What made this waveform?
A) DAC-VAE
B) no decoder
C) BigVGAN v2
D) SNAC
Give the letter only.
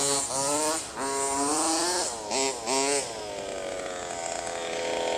B